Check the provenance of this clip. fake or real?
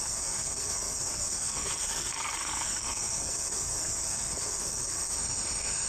fake